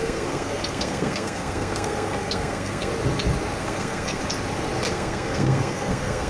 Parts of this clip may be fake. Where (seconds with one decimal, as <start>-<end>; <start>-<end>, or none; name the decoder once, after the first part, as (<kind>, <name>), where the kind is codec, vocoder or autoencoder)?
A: 0.0-2.9 (codec, SNAC); 3.6-4.2; 4.9-6.3